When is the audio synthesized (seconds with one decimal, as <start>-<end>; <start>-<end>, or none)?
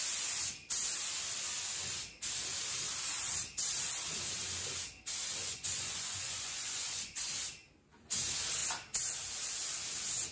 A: 5.4-7.3